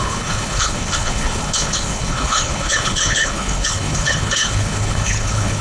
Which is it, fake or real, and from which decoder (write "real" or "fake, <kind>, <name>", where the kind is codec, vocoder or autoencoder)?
fake, codec, HILCodec